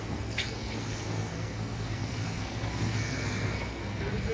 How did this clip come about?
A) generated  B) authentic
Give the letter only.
A